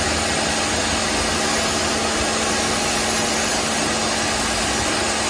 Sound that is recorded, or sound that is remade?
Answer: recorded